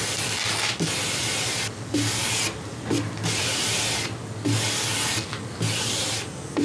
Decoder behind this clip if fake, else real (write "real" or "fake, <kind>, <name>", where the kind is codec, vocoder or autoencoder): real